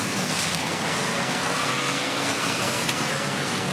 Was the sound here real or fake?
fake